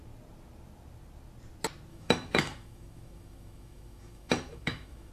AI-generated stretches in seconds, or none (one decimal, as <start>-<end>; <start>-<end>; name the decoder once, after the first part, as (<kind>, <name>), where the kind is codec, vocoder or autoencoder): 1.9-5.1 (autoencoder, DAC-VAE)